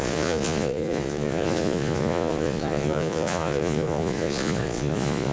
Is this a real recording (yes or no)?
no